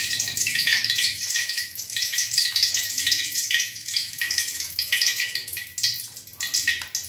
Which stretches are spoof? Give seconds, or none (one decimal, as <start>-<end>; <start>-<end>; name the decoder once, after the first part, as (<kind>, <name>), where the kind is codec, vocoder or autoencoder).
0.0-5.7 (autoencoder, DAC-VAE)